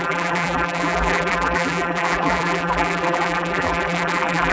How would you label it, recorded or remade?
remade